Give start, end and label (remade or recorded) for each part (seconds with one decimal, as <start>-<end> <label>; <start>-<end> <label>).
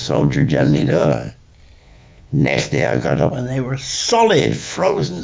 0.0-1.3 remade; 1.3-1.8 recorded; 1.8-3.3 remade; 3.3-4.4 recorded; 4.4-5.2 remade